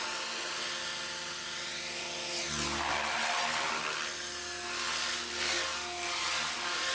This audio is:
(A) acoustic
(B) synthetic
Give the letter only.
A